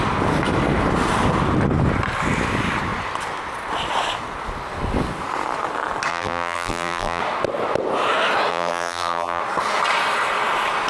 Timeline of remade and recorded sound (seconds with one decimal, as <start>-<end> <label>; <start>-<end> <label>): 0.0-6.1 recorded; 6.1-7.2 remade; 7.2-8.5 recorded; 8.5-9.4 remade; 9.4-10.9 recorded